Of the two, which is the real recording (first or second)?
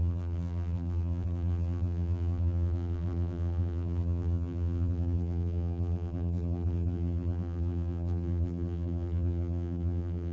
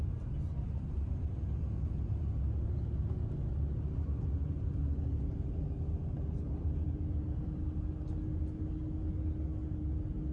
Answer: second